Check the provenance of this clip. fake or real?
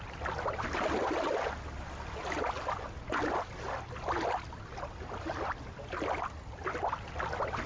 real